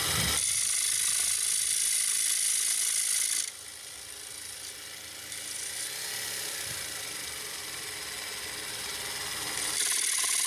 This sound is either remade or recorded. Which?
recorded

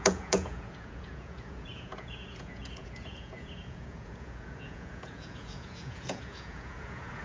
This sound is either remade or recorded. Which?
remade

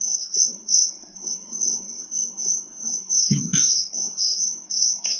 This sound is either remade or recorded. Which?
remade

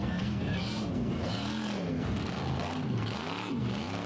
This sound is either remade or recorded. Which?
remade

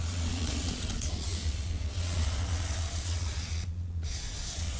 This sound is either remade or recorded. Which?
remade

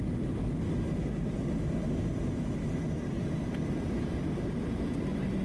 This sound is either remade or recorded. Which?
recorded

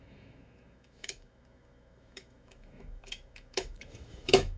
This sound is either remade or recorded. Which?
remade